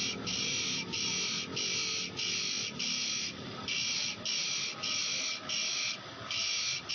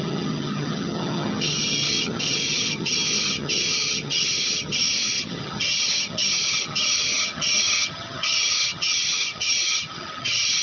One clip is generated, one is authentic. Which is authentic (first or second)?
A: first